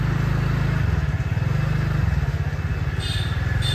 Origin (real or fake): real